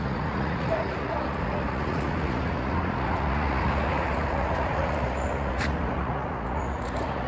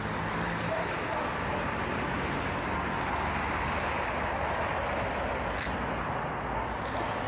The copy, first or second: first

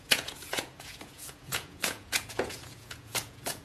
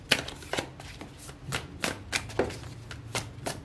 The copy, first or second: first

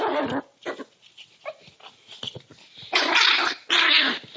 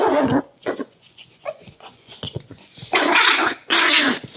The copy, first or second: second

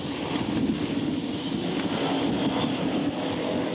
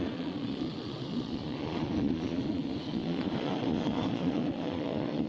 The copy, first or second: second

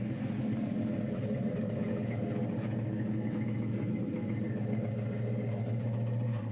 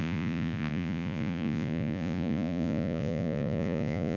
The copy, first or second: second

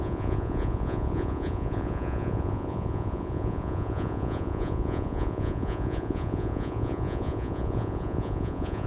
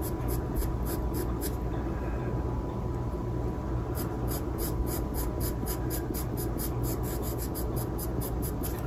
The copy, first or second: first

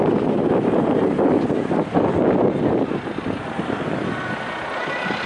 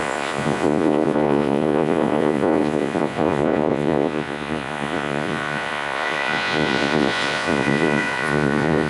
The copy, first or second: second